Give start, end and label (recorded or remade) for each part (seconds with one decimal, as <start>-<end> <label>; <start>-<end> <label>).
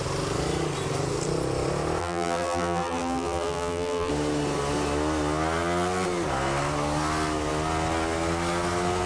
0.0-2.0 recorded; 2.0-4.1 remade; 4.1-9.1 recorded